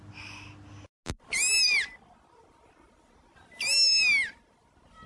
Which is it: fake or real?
real